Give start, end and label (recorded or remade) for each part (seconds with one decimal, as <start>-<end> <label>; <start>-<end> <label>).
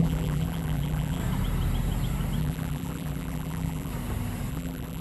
0.0-1.2 remade; 1.2-2.4 recorded; 2.4-3.9 remade; 3.9-4.5 recorded; 4.5-5.0 remade